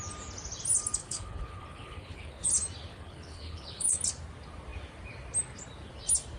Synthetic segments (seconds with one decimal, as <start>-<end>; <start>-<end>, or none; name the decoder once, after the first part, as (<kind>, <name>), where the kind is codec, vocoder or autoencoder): 1.0-2.5 (codec, HILCodec); 2.9-4.0